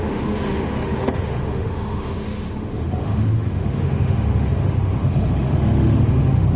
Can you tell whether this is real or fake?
fake